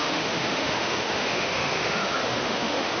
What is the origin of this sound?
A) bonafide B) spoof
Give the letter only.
B